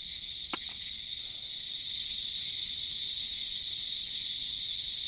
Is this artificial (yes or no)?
no